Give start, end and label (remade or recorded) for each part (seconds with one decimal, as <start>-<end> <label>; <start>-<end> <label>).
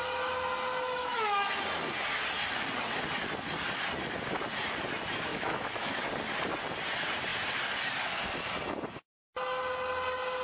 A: 0.0-1.0 recorded; 1.0-1.6 remade; 1.6-5.3 recorded; 5.3-6.1 remade; 6.1-10.4 recorded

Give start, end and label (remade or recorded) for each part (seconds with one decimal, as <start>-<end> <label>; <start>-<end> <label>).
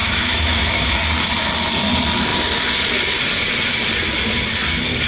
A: 0.0-0.9 remade; 0.9-5.1 recorded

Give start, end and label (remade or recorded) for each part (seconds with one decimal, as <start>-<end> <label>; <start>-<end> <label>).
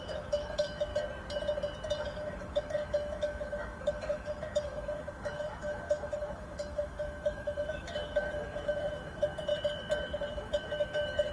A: 0.0-0.9 remade; 0.9-2.0 recorded; 2.0-9.5 remade; 9.5-10.3 recorded; 10.3-11.3 remade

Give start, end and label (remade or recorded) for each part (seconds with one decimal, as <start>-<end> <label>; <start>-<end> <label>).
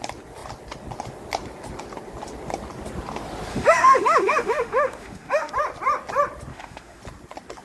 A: 0.0-3.5 recorded; 3.5-5.5 remade; 5.5-6.5 recorded; 6.5-7.0 remade; 7.0-7.6 recorded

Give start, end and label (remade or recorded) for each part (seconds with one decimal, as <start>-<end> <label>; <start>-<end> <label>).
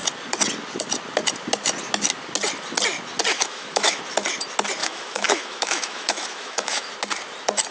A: 0.0-3.3 recorded; 3.3-4.0 remade; 4.0-4.8 recorded; 4.8-6.9 remade; 6.9-7.7 recorded